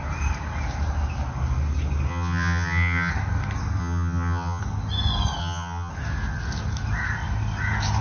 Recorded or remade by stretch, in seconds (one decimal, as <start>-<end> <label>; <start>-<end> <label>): 0.0-2.1 recorded; 2.1-3.1 remade; 3.1-3.8 recorded; 3.8-4.6 remade; 4.6-5.4 recorded; 5.4-5.9 remade; 5.9-8.0 recorded